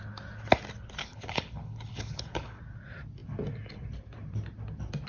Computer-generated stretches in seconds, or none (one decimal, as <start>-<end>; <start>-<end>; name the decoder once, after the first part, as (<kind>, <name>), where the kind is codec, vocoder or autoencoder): 1.0-2.6 (codec, HILCodec)